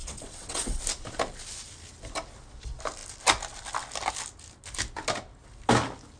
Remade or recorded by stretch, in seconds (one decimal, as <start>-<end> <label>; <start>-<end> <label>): 0.0-0.8 remade; 0.8-6.2 recorded